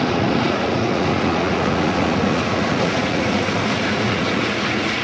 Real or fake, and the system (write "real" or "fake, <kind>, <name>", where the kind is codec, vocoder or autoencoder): fake, vocoder, Vocos